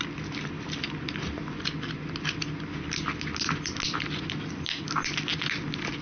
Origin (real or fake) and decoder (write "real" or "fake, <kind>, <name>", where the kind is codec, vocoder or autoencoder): real